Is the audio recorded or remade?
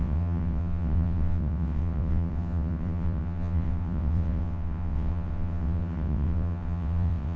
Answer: remade